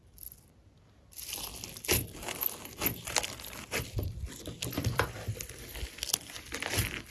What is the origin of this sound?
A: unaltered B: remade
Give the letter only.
B